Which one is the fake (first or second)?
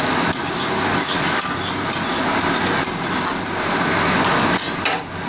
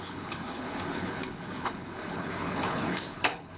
second